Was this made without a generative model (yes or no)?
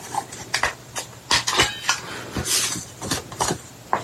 yes